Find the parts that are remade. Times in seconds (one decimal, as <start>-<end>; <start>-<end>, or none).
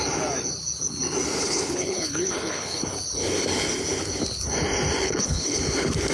1.4-2.8; 5.0-5.6